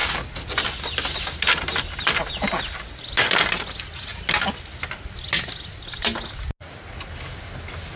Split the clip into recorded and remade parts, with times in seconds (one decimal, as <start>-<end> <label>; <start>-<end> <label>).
0.0-8.0 recorded